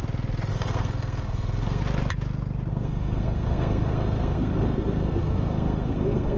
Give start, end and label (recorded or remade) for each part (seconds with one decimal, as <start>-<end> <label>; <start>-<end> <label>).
0.0-0.5 recorded; 0.5-1.8 remade; 1.8-2.7 recorded; 2.7-6.4 remade